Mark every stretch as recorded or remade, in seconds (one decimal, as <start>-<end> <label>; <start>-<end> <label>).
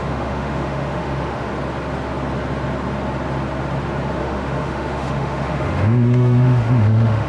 0.0-1.5 remade; 1.5-4.2 recorded; 4.2-7.3 remade